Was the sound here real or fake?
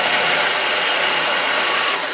fake